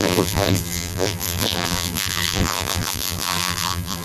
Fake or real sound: fake